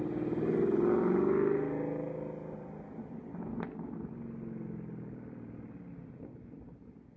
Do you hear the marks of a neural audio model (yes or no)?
no